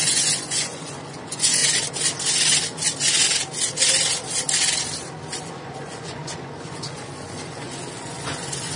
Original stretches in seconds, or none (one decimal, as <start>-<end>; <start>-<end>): 1.6-5.4